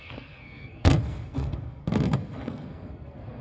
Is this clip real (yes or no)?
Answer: no